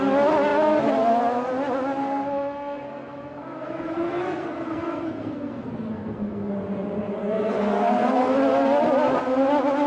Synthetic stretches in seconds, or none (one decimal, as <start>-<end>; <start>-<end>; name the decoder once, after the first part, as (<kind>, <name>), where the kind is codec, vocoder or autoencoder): 2.0-6.5 (codec, SNAC); 7.2-8.2